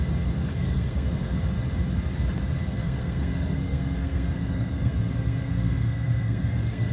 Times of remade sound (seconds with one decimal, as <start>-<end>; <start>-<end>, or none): 0.5-1.3; 2.8-6.9